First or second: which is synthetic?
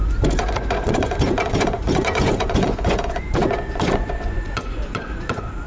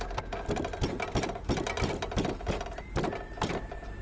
first